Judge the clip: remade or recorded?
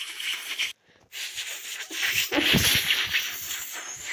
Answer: recorded